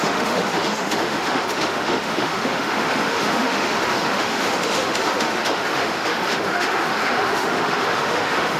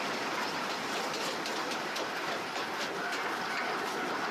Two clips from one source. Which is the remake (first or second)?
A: first